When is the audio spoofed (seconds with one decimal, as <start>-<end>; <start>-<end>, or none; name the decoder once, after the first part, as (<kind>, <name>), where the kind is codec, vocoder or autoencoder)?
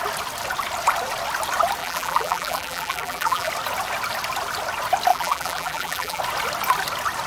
1.8-3.5 (vocoder, BigVGAN v2); 5.1-6.2